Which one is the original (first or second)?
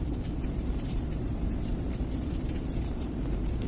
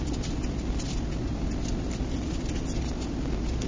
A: second